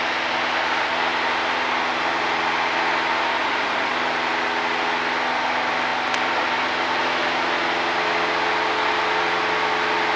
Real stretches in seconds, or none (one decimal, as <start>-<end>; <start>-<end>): 0.0-3.4; 3.9-10.2